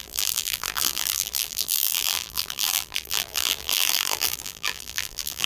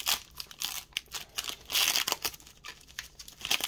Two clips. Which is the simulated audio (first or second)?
first